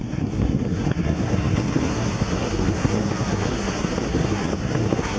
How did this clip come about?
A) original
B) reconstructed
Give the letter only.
B